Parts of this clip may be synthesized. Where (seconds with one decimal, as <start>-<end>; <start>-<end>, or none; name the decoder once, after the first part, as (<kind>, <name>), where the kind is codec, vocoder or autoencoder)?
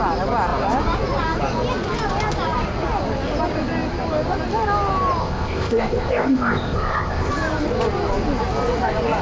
5.2-7.3 (codec, ZipCodec)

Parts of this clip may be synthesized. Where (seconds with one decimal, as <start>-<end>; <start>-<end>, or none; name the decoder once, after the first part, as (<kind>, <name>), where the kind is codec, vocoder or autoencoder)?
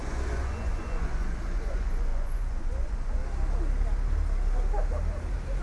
0.0-3.2 (vocoder, Vocos)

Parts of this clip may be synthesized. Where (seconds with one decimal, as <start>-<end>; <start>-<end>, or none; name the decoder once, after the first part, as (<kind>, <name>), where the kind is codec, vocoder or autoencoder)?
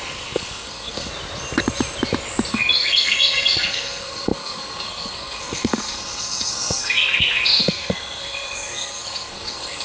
0.0-1.1 (codec, SNAC); 2.5-9.8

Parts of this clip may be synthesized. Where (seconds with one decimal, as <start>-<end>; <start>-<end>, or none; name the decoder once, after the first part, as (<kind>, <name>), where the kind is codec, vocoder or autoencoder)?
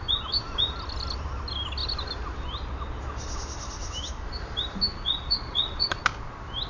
4.9-6.0 (vocoder, Vocos)